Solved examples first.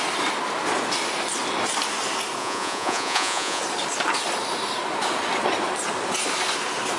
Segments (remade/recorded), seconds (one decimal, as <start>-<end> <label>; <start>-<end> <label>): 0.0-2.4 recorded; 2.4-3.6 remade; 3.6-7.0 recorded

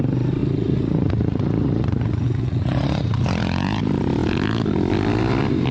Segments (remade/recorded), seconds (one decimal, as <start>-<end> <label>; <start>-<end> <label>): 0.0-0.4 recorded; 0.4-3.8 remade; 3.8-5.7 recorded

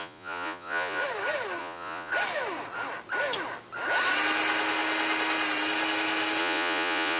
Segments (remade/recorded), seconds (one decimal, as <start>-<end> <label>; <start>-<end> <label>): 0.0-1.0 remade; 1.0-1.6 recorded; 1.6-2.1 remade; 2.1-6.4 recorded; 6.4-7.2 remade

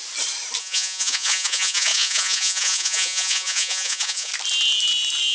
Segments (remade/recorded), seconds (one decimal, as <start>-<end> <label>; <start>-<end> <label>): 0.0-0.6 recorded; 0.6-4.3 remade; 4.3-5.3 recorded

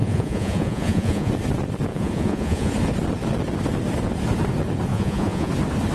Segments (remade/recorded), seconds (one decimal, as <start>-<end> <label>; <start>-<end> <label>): 0.0-1.3 remade; 1.3-1.9 recorded; 1.9-2.7 remade; 2.7-4.9 recorded; 4.9-5.5 remade; 5.5-5.9 recorded

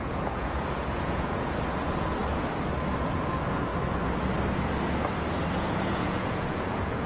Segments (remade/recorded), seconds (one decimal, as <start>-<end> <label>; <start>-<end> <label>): 0.0-2.2 remade; 2.2-2.9 recorded; 2.9-3.7 remade; 3.7-5.5 recorded; 5.5-7.1 remade

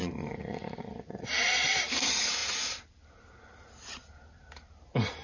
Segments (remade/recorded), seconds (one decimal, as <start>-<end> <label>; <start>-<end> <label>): 0.0-1.2 remade; 1.2-5.2 recorded

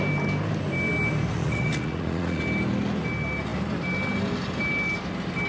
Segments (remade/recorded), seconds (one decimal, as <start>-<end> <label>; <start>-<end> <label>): 0.0-1.3 recorded; 1.3-2.4 remade; 2.4-5.5 recorded